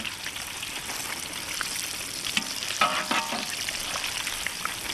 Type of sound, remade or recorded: recorded